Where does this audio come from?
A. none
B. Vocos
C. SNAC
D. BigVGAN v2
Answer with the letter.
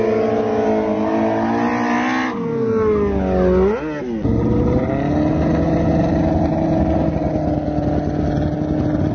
A